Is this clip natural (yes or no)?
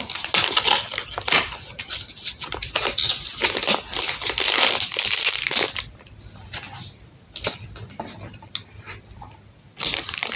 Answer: yes